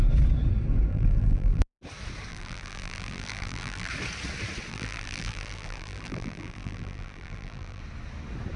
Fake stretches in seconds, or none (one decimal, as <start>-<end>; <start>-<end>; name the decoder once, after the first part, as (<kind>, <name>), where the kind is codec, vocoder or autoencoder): 0.9-1.8 (vocoder, BigVGAN v2); 2.3-3.9; 4.7-7.8